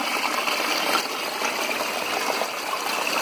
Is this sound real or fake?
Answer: real